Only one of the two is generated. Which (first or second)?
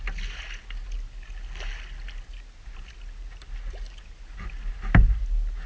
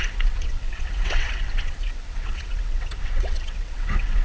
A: second